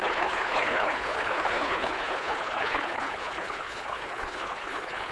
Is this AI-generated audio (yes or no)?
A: yes